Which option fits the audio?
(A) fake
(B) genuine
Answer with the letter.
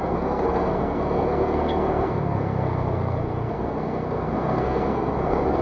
A